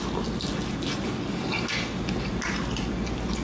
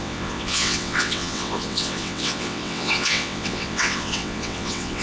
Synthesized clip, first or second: second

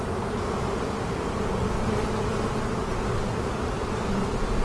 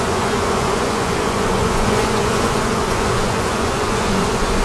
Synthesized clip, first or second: second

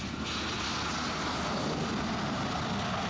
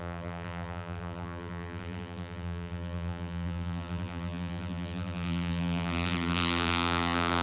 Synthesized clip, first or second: second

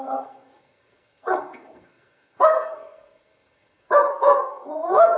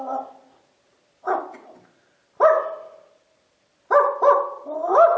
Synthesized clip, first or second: first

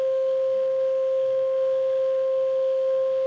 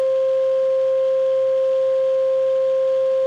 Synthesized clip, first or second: first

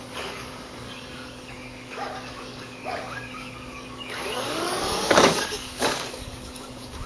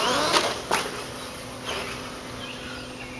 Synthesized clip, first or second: first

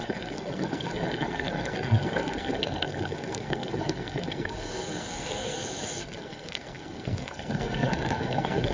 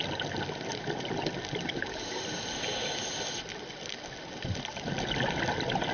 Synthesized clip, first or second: first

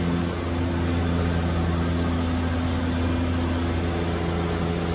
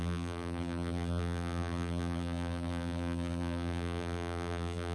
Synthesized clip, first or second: second